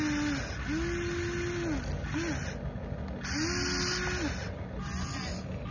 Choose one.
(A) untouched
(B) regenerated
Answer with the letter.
A